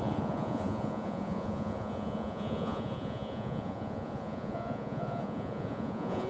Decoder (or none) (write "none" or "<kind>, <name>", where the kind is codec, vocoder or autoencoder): vocoder, Vocos